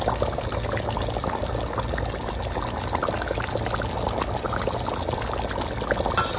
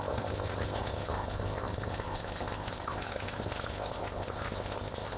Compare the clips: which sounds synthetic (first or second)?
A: second